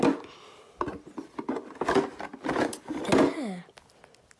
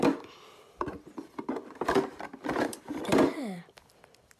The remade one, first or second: second